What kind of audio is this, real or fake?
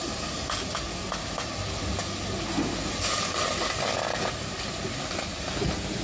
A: real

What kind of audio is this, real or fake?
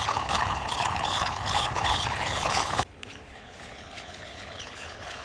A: fake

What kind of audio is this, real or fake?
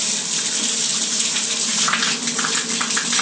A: real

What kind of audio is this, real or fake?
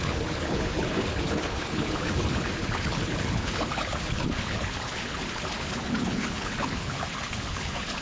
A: fake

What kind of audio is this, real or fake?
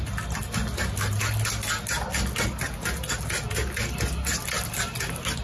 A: real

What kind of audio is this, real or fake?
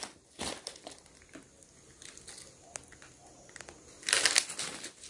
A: real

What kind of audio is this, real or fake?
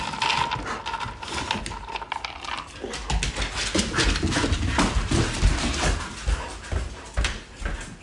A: real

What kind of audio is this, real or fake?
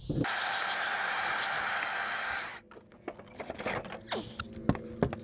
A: real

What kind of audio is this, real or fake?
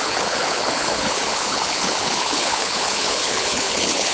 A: fake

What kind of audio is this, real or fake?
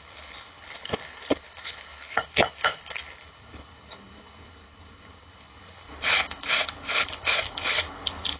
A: fake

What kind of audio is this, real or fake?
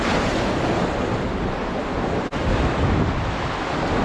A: real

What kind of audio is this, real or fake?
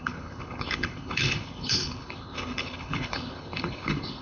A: fake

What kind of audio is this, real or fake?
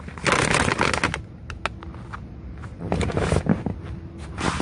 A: real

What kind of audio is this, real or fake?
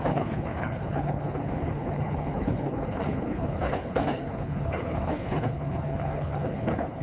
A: fake